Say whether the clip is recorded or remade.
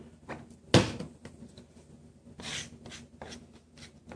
recorded